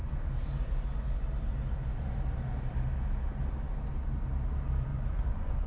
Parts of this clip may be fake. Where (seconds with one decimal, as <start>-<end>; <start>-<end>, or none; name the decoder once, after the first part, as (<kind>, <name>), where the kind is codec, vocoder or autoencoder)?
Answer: 4.9-5.7 (vocoder, Vocos)